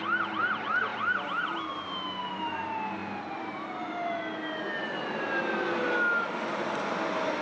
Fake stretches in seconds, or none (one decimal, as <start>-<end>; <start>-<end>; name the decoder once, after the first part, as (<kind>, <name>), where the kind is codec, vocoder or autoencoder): none